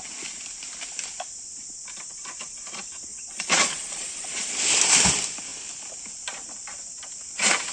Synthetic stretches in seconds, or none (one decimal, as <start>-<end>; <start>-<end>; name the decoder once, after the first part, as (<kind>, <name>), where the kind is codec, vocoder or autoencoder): 3.1-4.5 (vocoder, Vocos)